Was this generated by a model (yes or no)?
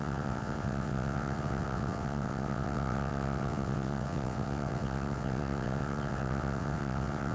yes